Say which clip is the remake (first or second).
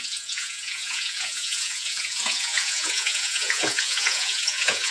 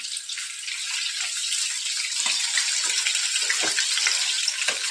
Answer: first